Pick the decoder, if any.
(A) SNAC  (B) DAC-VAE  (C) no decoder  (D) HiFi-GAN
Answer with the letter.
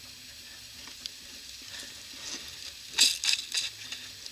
C